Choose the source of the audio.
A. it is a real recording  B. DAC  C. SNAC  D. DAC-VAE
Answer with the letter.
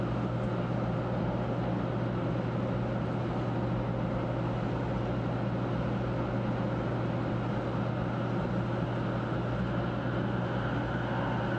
A